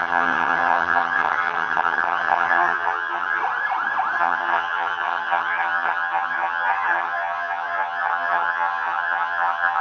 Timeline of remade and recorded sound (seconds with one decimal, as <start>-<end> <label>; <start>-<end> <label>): 0.0-3.4 remade; 3.4-4.2 recorded; 4.2-9.8 remade